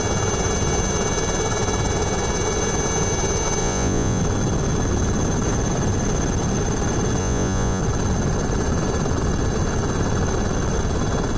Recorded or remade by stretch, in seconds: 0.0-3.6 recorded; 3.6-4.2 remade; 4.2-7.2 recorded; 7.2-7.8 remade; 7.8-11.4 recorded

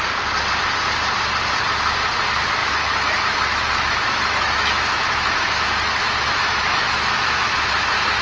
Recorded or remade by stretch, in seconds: 0.0-2.6 recorded; 2.6-7.5 remade; 7.5-8.2 recorded

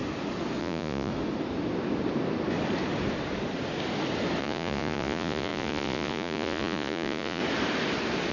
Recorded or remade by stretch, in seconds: 0.0-0.6 recorded; 0.6-1.1 remade; 1.1-4.4 recorded; 4.4-7.4 remade; 7.4-8.3 recorded